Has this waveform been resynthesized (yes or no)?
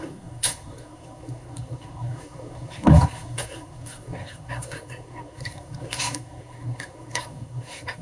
yes